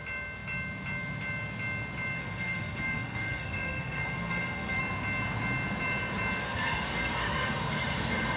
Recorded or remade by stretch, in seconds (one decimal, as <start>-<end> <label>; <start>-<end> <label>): 0.0-2.2 recorded; 2.2-4.8 remade; 4.8-6.4 recorded; 6.4-8.4 remade